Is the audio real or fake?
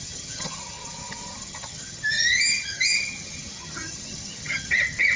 fake